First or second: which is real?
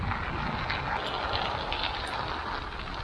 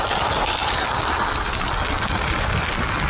first